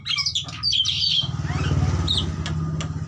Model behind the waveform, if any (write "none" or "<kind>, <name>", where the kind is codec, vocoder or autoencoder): none